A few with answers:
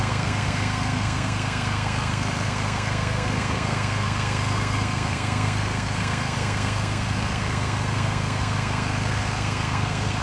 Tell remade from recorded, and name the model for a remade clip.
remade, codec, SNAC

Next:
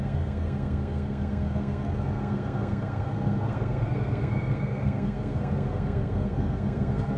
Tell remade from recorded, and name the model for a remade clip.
remade, codec, SNAC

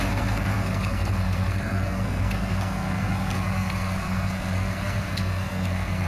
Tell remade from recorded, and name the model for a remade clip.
remade, codec, SNAC